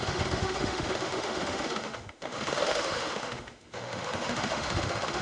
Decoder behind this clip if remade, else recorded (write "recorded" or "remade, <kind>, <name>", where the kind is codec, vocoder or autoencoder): remade, autoencoder, DAC-VAE